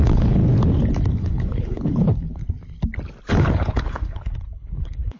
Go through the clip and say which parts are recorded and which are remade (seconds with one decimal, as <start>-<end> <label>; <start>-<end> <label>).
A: 0.0-0.4 remade; 0.4-1.2 recorded; 1.2-2.4 remade; 2.4-3.3 recorded; 3.3-5.2 remade